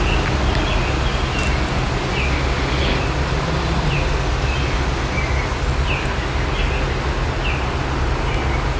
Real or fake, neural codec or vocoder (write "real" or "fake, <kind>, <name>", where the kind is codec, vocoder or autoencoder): real